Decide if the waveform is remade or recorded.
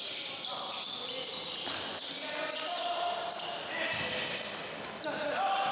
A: recorded